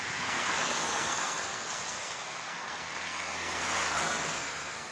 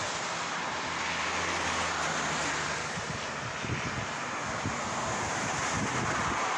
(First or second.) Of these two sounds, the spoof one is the first